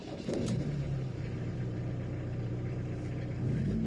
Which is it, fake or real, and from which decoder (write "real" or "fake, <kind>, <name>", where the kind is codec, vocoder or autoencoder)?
fake, vocoder, BigVGAN v2